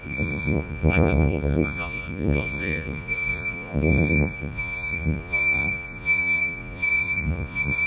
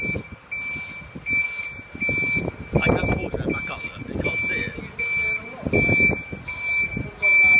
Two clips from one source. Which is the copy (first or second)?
first